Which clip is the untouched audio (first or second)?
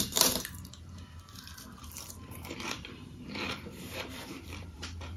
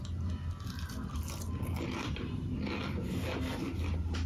second